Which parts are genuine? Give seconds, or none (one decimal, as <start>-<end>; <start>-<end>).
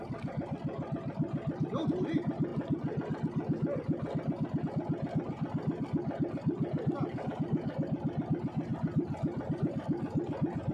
0.0-10.7